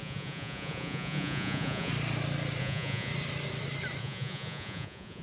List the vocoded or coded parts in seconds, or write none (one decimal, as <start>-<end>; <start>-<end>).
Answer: 0.0-1.9; 2.6-3.1; 4.0-5.2